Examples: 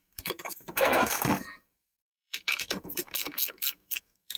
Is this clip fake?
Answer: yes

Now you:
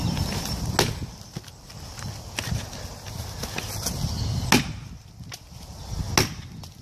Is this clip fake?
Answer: no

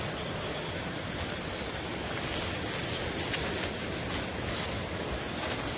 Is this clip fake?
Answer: no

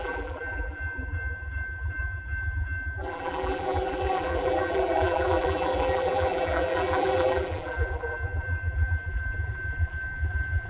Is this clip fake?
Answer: yes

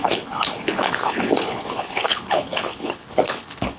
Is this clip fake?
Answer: yes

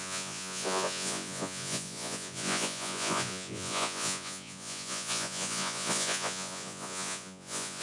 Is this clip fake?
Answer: yes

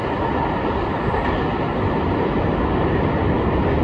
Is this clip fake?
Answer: no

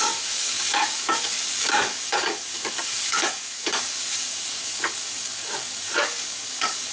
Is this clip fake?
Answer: yes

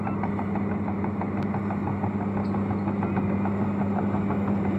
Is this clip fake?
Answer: no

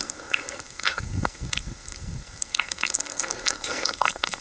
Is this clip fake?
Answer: yes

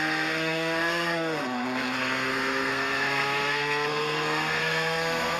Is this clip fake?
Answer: yes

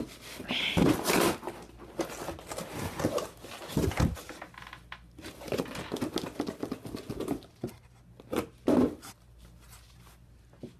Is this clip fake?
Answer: no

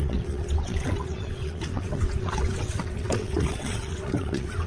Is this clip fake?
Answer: yes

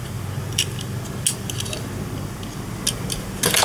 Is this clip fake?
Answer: no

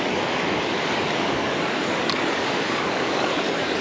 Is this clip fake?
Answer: yes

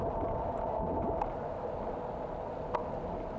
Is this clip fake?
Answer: no